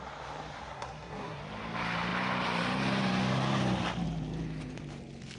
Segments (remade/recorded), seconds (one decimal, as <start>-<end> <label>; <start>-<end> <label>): 0.0-0.7 recorded; 0.7-1.4 remade; 1.4-5.4 recorded